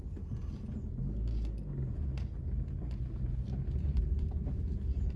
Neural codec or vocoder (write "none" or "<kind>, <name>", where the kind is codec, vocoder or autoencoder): none